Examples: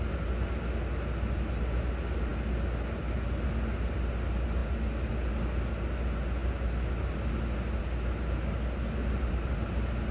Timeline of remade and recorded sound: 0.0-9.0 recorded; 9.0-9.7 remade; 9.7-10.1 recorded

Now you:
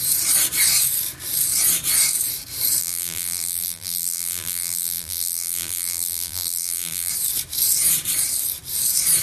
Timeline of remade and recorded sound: 0.0-2.8 recorded; 2.8-7.1 remade; 7.1-9.2 recorded

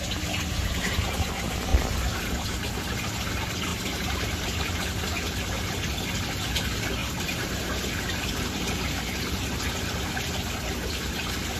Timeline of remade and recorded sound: 0.0-1.7 recorded; 1.7-2.7 remade; 2.7-3.7 recorded; 3.7-4.7 remade; 4.7-7.0 recorded; 7.0-9.6 remade; 9.6-11.6 recorded

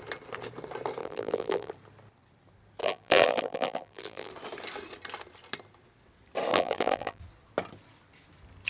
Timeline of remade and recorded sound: 0.0-1.0 recorded; 1.0-1.7 remade; 1.7-2.8 recorded; 2.8-4.3 remade; 4.3-6.5 recorded; 6.5-7.2 remade; 7.2-8.7 recorded

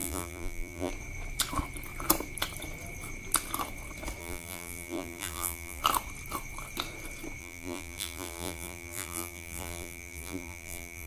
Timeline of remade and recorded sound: 0.0-0.9 remade; 0.9-4.2 recorded; 4.2-5.8 remade; 5.8-7.4 recorded; 7.4-11.1 remade

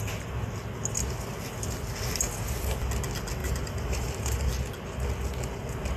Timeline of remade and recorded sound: 0.0-3.4 recorded; 3.4-4.5 remade; 4.5-6.0 recorded

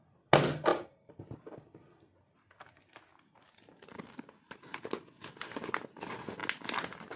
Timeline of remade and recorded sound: 0.0-0.7 recorded; 0.7-1.4 remade; 1.4-3.1 recorded; 3.1-5.2 remade; 5.2-7.2 recorded